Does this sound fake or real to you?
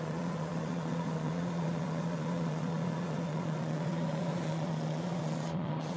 fake